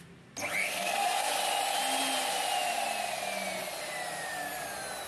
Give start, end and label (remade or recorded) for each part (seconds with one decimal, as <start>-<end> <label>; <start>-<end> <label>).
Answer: 0.0-0.6 recorded; 0.6-1.3 remade; 1.3-5.1 recorded